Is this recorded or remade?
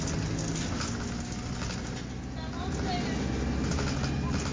recorded